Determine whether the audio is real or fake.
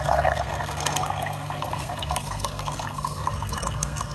fake